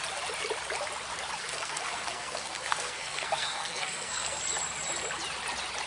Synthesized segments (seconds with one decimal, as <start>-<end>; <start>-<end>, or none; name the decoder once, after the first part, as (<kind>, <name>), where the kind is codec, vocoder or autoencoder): 1.4-4.4 (codec, SNAC)